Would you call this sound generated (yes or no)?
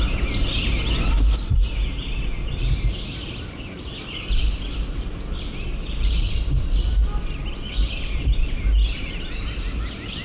no